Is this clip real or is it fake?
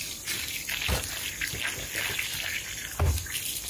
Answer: real